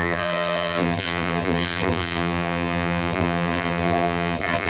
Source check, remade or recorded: remade